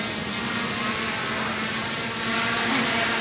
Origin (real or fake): real